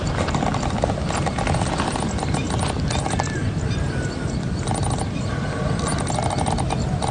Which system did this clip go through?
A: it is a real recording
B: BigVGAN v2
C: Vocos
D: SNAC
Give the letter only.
A